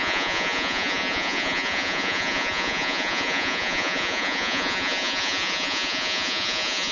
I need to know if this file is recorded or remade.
remade